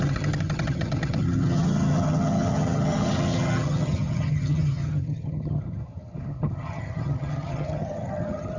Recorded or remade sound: remade